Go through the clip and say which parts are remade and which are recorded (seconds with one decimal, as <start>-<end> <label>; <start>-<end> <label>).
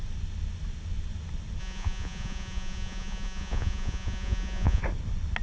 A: 0.0-1.6 recorded; 1.6-4.8 remade; 4.8-5.4 recorded